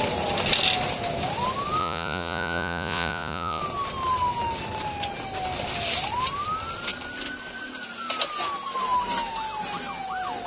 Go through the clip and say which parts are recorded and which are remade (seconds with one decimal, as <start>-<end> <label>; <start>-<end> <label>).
0.0-1.8 recorded; 1.8-3.6 remade; 3.6-10.5 recorded